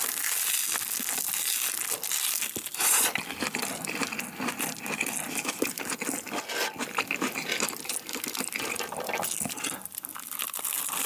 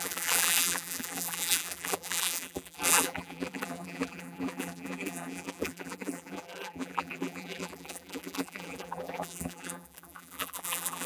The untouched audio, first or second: first